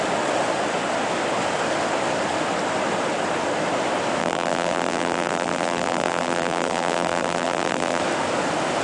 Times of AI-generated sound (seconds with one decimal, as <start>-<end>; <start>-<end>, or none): 4.2-8.0